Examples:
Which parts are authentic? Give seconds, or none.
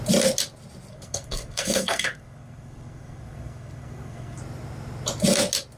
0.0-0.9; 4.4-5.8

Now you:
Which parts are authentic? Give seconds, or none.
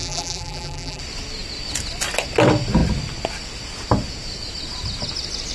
1.0-5.5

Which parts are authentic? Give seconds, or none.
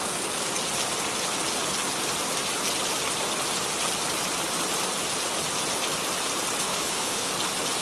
0.0-6.6; 7.3-7.8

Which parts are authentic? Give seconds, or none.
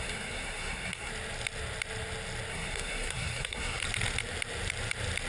1.1-2.5; 3.8-5.3